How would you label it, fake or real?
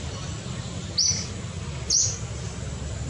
real